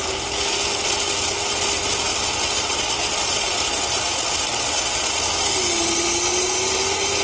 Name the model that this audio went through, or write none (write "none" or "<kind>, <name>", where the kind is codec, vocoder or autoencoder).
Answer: none